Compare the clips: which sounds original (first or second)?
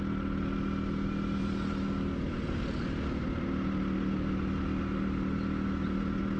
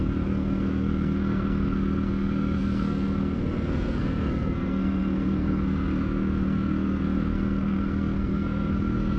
first